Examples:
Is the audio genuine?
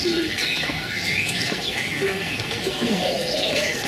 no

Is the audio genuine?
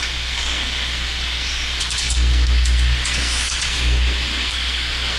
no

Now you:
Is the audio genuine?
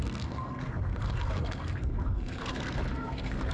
no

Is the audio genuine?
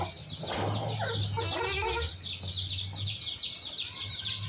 yes